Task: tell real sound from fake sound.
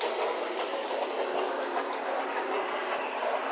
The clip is fake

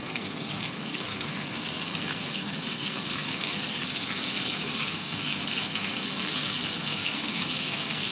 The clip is fake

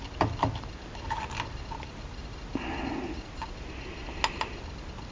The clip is real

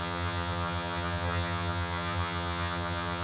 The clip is fake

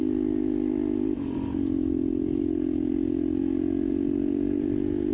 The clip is real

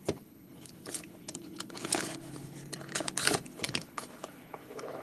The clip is fake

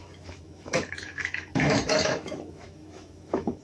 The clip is fake